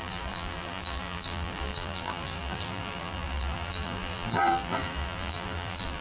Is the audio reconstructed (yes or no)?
yes